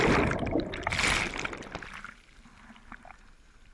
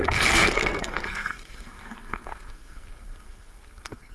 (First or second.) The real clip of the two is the first